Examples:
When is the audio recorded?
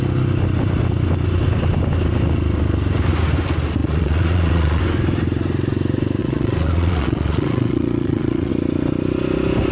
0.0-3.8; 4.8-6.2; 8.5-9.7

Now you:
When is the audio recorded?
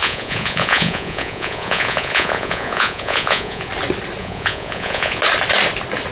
3.7-4.2; 5.2-6.1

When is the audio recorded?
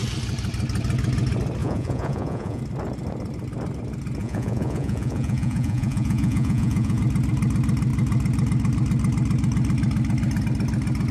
0.0-1.6; 2.6-4.2; 7.0-11.1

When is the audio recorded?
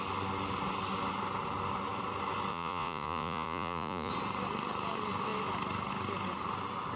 0.0-2.5; 4.1-7.0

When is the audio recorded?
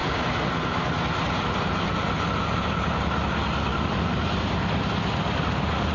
0.0-5.9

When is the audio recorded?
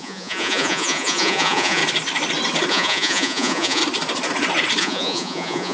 1.8-2.7; 3.8-4.8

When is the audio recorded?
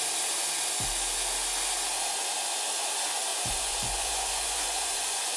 0.0-3.3